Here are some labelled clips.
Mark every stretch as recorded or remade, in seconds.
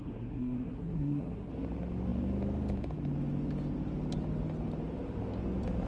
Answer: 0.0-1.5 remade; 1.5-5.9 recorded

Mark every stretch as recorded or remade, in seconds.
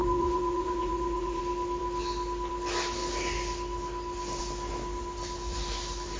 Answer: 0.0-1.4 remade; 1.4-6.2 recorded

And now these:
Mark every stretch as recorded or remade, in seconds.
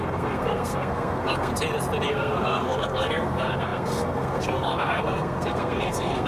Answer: 0.0-1.5 remade; 1.5-2.1 recorded; 2.1-6.3 remade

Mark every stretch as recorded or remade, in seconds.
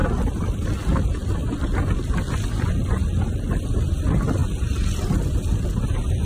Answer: 0.0-0.7 remade; 0.7-1.4 recorded; 1.4-2.4 remade; 2.4-6.2 recorded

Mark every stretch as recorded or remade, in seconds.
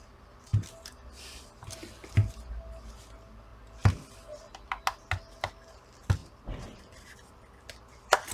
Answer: 0.0-8.3 recorded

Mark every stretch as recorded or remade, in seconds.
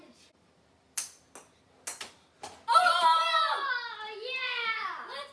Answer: 0.0-5.3 recorded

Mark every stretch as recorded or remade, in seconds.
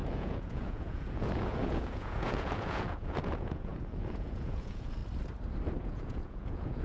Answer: 0.0-5.0 remade; 5.0-5.8 recorded; 5.8-6.8 remade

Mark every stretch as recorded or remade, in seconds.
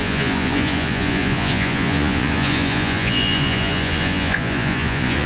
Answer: 0.0-5.3 remade